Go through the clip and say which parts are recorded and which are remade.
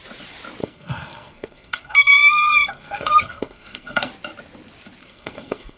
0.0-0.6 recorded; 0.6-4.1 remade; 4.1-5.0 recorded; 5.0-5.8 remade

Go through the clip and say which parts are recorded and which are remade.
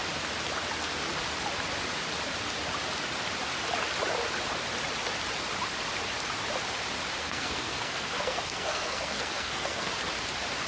0.0-7.2 recorded; 7.2-9.9 remade; 9.9-10.7 recorded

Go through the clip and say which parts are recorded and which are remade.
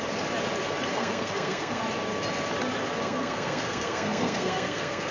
0.0-0.9 recorded; 0.9-1.8 remade; 1.8-3.0 recorded; 3.0-5.1 remade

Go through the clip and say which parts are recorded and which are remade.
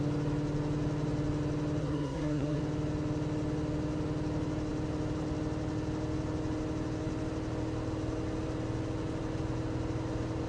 0.0-1.8 recorded; 1.8-2.6 remade; 2.6-10.5 recorded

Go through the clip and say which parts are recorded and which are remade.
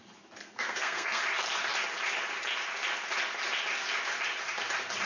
0.0-0.4 recorded; 0.4-1.2 remade; 1.2-5.1 recorded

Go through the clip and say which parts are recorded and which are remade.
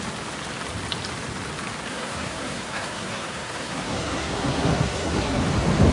0.0-1.9 recorded; 1.9-5.4 remade; 5.4-5.9 recorded